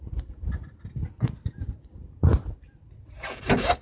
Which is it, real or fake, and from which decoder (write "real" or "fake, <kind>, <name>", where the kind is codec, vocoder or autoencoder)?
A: real